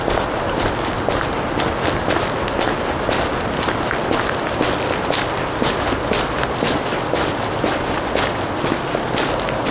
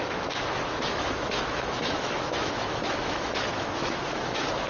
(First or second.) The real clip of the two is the first